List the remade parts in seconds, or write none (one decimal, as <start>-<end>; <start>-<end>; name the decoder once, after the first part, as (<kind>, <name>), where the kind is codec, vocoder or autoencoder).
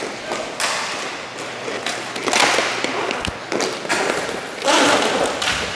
none